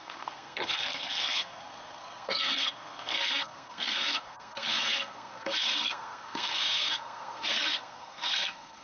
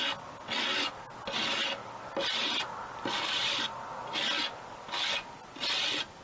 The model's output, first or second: first